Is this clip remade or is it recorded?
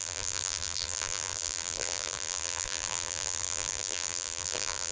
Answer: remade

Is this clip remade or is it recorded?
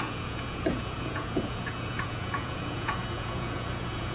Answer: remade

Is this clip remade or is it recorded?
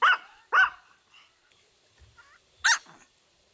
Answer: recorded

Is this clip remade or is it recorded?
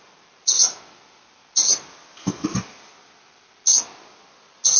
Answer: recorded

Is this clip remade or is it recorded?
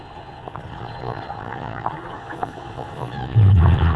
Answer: remade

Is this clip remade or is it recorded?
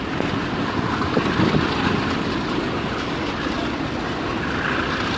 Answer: recorded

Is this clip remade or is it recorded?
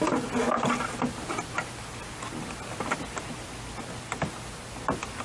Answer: recorded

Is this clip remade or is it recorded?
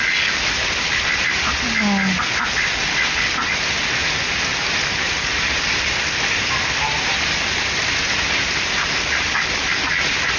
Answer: recorded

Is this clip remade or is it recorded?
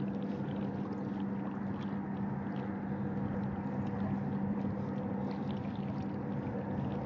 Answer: recorded